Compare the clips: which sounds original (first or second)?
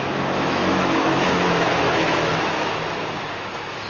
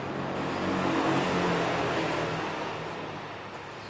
second